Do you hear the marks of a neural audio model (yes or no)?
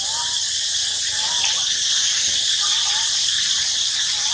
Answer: yes